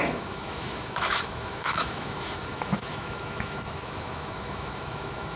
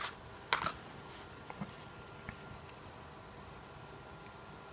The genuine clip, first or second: second